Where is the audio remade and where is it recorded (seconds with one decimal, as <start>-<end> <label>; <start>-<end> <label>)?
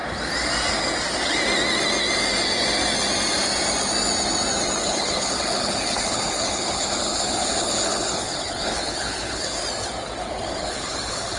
0.0-4.8 recorded; 4.8-9.6 remade; 9.6-10.2 recorded; 10.2-11.4 remade